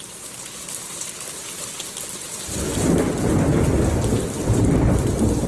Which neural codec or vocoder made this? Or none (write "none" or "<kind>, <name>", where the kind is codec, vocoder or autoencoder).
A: none